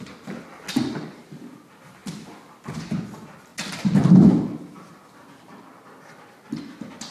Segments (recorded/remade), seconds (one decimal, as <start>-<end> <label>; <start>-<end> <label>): 0.0-7.1 recorded